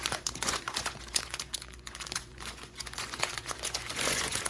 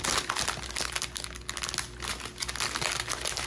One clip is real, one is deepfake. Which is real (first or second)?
second